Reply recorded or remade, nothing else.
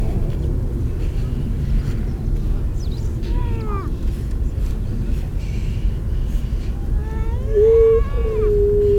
recorded